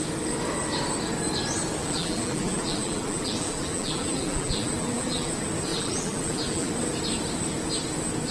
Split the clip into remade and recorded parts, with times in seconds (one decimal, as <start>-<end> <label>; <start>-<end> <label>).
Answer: 0.0-1.8 recorded; 1.8-5.3 remade; 5.3-5.7 recorded; 5.7-6.7 remade; 6.7-8.3 recorded